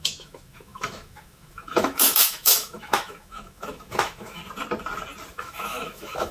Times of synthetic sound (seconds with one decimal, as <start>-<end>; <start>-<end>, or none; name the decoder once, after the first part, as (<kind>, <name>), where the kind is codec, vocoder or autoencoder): 0.0-4.4 (autoencoder, DAC-VAE); 5.3-6.3